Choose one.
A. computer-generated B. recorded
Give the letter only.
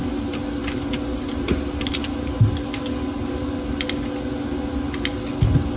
B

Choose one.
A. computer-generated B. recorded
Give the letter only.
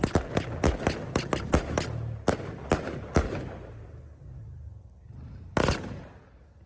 B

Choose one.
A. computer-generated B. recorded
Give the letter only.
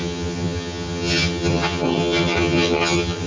A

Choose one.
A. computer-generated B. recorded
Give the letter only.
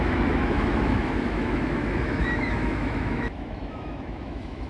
A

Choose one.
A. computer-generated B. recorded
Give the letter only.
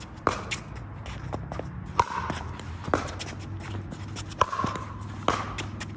B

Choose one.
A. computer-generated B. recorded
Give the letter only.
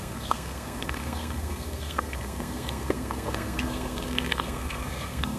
A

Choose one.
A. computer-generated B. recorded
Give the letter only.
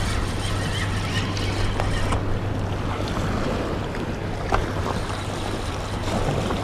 B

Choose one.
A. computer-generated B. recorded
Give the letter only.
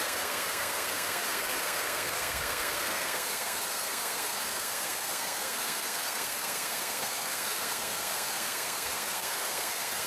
A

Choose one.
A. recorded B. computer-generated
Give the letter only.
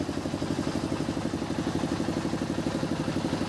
A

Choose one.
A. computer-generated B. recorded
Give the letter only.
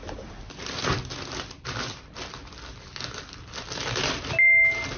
B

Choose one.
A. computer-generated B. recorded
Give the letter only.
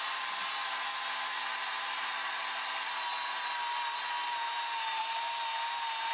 B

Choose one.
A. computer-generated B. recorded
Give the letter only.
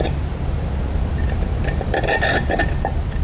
A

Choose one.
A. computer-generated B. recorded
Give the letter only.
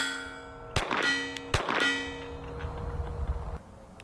B